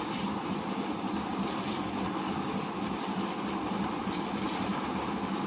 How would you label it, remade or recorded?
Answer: recorded